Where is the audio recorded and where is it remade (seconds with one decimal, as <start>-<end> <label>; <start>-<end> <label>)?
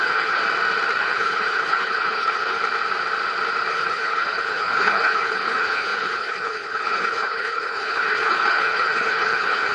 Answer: 0.0-0.4 remade; 0.4-1.0 recorded; 1.0-2.6 remade; 2.6-3.7 recorded; 3.7-9.7 remade